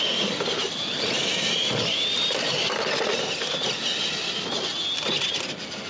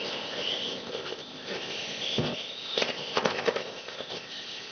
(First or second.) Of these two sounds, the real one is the first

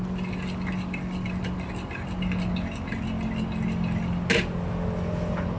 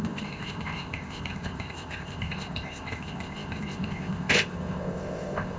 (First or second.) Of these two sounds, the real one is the first